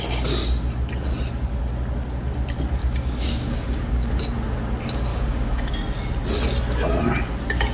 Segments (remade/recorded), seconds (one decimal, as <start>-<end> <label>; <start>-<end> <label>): 0.0-2.8 recorded; 2.8-4.1 remade; 4.1-5.1 recorded; 5.1-5.7 remade; 5.7-7.7 recorded